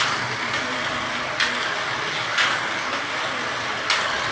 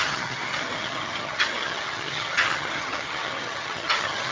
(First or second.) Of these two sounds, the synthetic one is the second